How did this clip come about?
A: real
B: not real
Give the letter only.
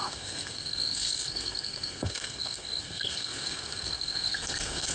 B